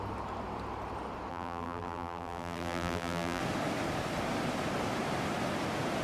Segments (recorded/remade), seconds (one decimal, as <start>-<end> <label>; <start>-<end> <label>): 0.0-1.3 recorded; 1.3-3.4 remade; 3.4-6.0 recorded